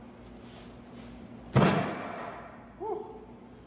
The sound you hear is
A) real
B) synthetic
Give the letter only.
A